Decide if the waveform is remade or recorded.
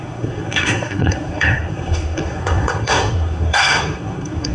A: remade